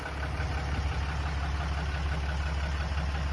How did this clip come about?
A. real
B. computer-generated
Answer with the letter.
A